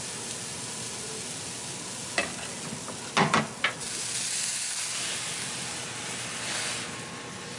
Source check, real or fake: real